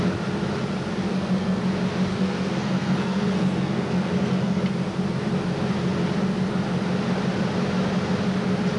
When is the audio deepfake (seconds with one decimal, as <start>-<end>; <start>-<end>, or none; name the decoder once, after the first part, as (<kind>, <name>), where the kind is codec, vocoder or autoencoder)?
1.1-1.6 (codec, SNAC); 2.1-4.6